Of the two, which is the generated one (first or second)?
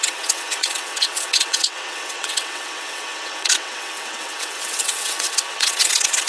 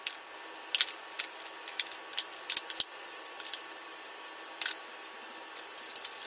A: first